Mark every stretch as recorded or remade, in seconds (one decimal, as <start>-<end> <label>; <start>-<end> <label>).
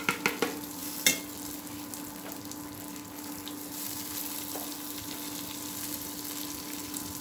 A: 0.0-7.2 recorded